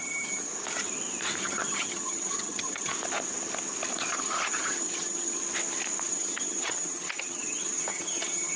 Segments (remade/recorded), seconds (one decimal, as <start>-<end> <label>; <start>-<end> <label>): 0.0-0.5 remade; 0.5-1.4 recorded; 1.4-2.9 remade; 2.9-4.1 recorded; 4.1-5.4 remade; 5.4-6.1 recorded; 6.1-8.6 remade